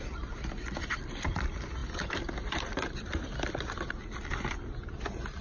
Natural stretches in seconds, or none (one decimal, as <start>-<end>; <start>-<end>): 0.0-5.4

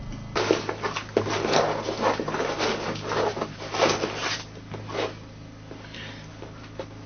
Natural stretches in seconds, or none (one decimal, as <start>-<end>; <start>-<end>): 0.0-7.1

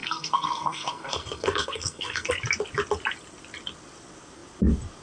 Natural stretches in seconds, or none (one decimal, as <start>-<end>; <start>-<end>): 2.3-5.0